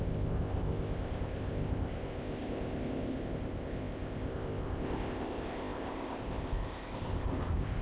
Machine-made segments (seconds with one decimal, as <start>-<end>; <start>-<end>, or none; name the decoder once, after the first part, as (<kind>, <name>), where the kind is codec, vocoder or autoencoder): 0.0-7.8 (codec, ZipCodec)